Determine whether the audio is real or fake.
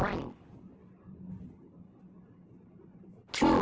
real